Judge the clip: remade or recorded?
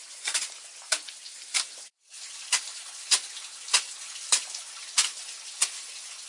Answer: recorded